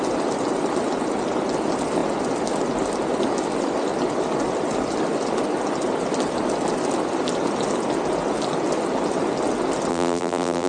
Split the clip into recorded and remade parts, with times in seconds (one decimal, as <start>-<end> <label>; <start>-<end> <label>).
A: 0.0-9.9 recorded; 9.9-10.7 remade